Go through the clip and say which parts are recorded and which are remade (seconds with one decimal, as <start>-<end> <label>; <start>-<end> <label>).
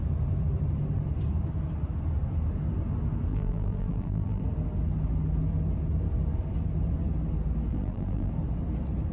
0.0-3.3 recorded; 3.3-4.4 remade; 4.4-7.7 recorded; 7.7-8.3 remade; 8.3-9.1 recorded